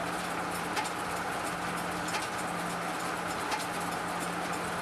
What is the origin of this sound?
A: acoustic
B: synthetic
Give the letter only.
A